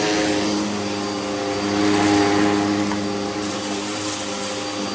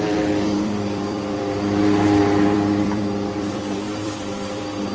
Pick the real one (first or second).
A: first